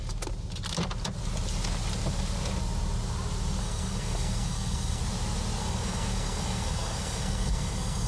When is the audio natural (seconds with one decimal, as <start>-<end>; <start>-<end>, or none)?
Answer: 0.0-3.6; 5.0-5.6